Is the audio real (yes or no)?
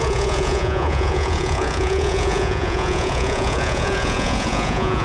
no